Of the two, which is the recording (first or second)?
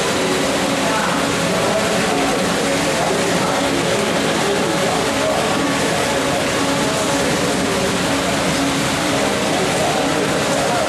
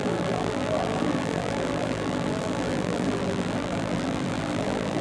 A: first